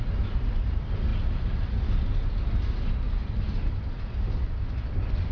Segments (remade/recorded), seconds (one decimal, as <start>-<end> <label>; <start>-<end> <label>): 0.0-5.3 recorded